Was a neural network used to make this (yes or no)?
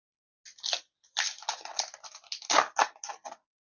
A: no